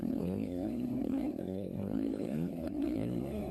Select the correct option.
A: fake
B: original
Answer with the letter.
A